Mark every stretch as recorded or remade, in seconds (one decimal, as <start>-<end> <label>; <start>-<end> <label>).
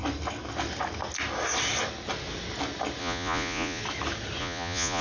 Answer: 0.0-3.0 recorded; 3.0-3.8 remade; 3.8-4.4 recorded; 4.4-5.0 remade